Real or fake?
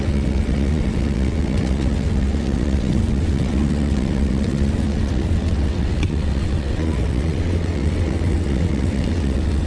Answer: fake